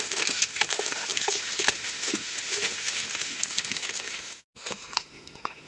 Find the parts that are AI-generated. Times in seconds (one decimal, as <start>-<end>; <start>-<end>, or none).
0.0-5.7